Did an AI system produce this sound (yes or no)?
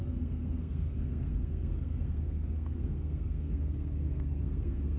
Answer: yes